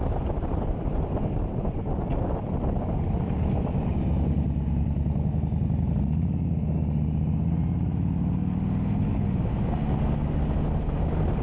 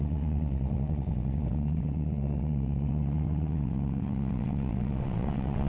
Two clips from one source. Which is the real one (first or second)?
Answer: first